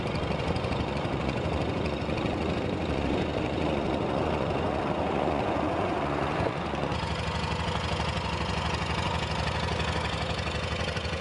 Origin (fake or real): fake